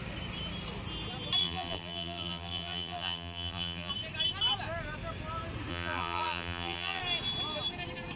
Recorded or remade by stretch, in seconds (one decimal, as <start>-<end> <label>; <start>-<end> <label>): 0.0-1.4 recorded; 1.4-3.9 remade; 3.9-5.7 recorded; 5.7-7.0 remade; 7.0-8.2 recorded